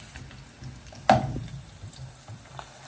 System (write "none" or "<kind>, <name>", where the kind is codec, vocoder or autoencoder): none